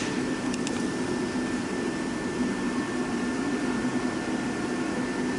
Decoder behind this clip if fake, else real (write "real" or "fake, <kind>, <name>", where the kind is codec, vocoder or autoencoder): real